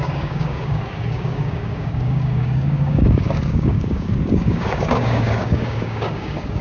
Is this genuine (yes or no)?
no